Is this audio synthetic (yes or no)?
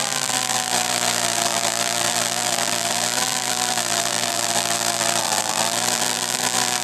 yes